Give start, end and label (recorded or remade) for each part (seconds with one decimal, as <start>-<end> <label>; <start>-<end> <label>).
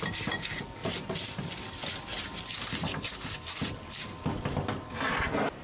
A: 0.0-0.8 recorded; 0.8-1.7 remade; 1.7-5.6 recorded